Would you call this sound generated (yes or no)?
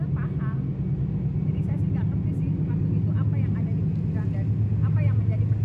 no